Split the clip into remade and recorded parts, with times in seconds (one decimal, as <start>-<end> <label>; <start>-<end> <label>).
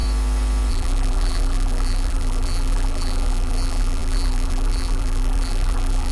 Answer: 0.0-0.7 recorded; 0.7-6.1 remade